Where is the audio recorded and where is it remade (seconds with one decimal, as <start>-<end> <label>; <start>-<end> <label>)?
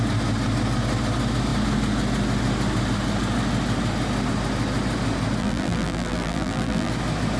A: 0.0-5.4 recorded; 5.4-6.9 remade; 6.9-7.4 recorded